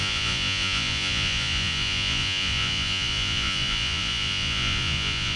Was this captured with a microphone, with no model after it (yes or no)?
no